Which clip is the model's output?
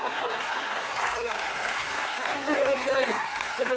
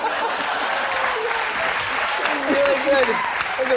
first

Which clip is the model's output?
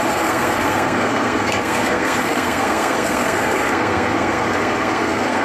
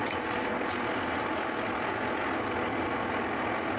first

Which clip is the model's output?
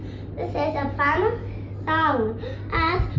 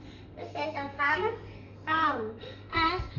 second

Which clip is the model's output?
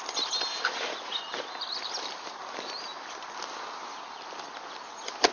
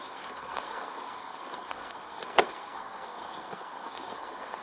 second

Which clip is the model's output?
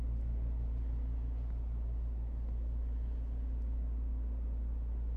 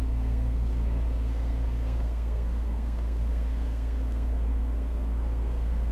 second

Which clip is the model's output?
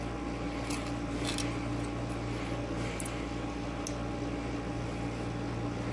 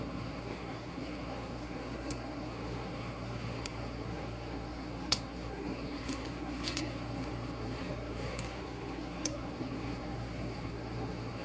second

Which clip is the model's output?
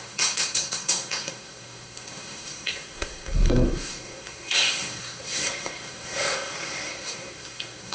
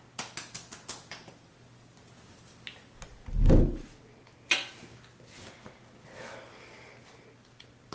first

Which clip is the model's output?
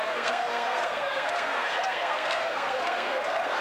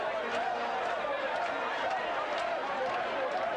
first